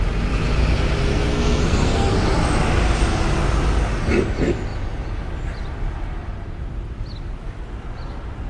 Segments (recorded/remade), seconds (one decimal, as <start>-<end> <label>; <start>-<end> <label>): 0.0-1.1 recorded; 1.1-2.2 remade; 2.2-8.5 recorded